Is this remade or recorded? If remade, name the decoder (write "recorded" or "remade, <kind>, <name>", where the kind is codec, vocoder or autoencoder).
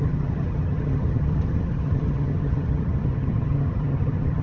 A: remade, vocoder, HiFi-GAN